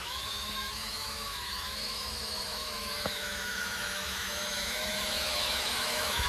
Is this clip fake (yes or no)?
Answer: yes